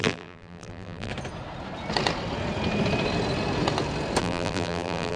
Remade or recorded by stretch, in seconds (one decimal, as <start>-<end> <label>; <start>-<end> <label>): 0.0-1.1 remade; 1.1-4.2 recorded; 4.2-5.2 remade